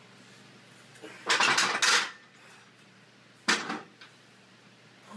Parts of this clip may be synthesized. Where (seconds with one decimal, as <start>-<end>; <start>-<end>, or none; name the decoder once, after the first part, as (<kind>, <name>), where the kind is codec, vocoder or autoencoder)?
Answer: none